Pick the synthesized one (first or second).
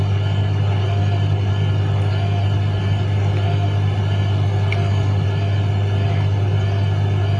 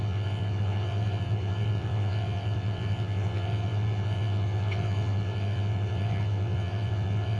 second